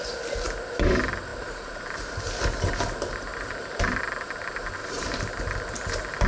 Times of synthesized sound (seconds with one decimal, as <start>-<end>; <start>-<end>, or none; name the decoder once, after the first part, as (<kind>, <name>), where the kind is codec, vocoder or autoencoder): 1.3-2.2 (vocoder, BigVGAN v2); 3.3-4.0; 4.8-5.4